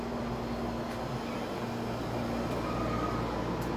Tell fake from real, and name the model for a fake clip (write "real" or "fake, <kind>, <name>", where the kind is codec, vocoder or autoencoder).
real